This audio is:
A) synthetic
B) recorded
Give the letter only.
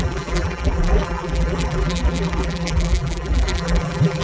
A